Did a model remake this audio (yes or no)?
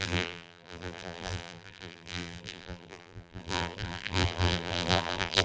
yes